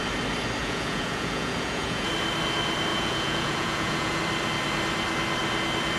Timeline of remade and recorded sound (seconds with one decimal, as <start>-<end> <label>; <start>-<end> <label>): 0.0-0.6 recorded; 0.6-2.1 remade; 2.1-2.9 recorded; 2.9-4.2 remade; 4.2-6.0 recorded

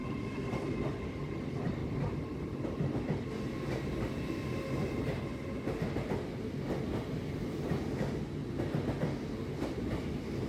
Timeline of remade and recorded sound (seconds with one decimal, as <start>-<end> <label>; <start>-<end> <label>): 0.0-10.5 recorded